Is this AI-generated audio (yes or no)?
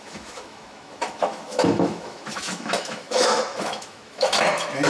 yes